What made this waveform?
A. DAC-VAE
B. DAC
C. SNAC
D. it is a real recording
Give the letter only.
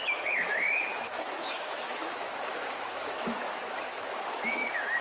A